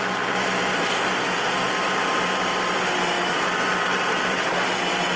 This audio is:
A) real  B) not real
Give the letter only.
A